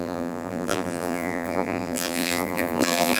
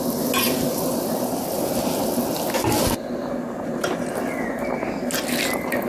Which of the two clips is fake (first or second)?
first